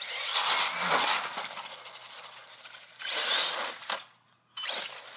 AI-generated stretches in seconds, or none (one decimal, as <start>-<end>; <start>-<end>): none